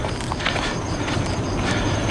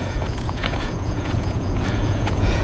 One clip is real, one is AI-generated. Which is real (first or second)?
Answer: first